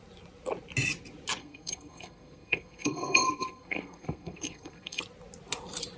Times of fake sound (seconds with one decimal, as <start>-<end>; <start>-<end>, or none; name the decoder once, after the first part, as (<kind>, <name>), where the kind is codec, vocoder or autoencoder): 1.4-5.0 (codec, SNAC)